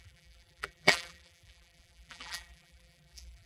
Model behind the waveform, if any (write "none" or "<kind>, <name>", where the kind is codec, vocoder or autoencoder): vocoder, BigVGAN v2